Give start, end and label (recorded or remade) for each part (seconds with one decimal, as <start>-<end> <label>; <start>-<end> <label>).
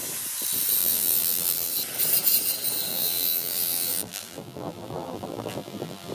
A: 0.0-0.8 recorded; 0.8-1.7 remade; 1.7-2.9 recorded; 2.9-6.1 remade